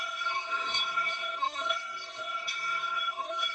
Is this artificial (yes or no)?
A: yes